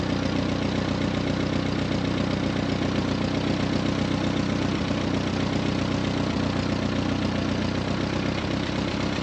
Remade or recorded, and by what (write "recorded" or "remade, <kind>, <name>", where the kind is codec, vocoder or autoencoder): recorded